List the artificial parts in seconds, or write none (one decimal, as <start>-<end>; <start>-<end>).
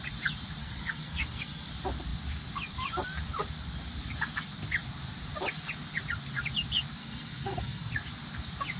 0.6-1.7; 7.0-7.9